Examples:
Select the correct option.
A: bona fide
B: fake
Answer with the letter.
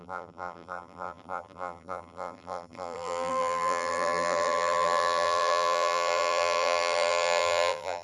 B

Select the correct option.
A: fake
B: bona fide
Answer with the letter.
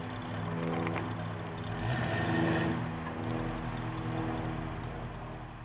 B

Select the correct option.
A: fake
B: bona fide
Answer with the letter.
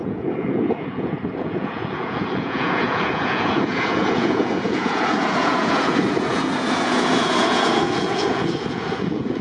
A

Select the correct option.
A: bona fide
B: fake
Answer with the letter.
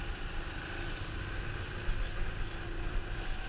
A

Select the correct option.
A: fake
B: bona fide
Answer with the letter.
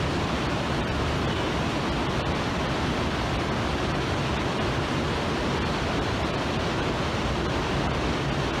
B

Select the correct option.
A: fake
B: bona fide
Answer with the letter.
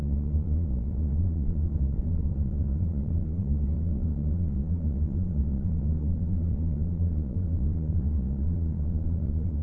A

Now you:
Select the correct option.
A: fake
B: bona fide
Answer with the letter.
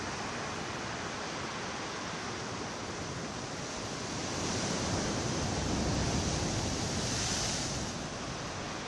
B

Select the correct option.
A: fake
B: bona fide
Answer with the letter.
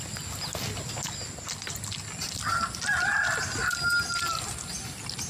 B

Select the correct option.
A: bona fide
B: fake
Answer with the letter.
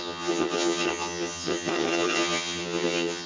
B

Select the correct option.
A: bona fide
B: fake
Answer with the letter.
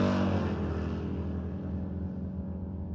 A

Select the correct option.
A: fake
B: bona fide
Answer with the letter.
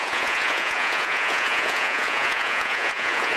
A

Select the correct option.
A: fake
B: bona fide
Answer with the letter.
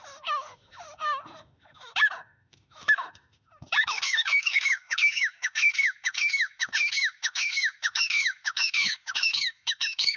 A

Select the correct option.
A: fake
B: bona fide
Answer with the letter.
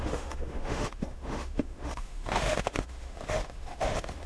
A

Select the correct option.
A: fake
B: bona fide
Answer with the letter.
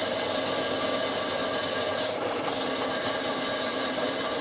B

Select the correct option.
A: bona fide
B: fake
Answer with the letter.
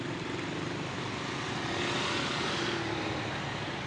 A